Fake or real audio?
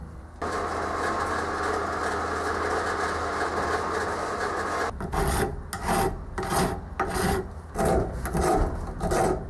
real